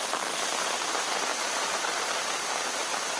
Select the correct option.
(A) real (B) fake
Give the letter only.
B